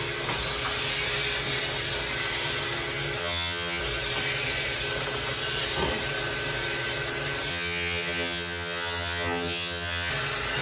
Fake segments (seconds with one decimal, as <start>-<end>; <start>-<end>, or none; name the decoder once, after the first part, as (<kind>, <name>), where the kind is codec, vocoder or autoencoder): 3.2-3.8 (vocoder, HiFi-GAN); 7.5-10.1